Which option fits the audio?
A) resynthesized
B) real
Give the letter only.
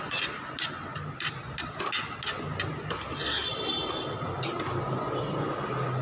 B